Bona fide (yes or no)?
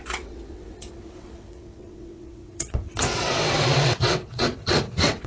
no